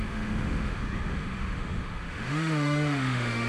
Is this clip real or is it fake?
fake